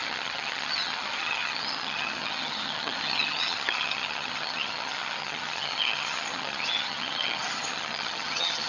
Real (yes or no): no